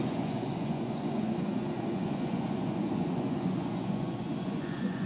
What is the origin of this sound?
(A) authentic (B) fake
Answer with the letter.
B